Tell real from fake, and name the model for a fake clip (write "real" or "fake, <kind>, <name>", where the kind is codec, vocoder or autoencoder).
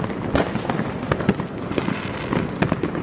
real